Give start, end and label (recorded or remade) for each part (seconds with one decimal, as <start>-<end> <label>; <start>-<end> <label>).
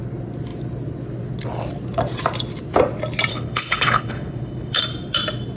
0.0-3.3 recorded; 3.3-4.8 remade; 4.8-5.6 recorded